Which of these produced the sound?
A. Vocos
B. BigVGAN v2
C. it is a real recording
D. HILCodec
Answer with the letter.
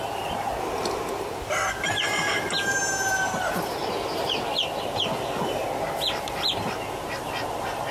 C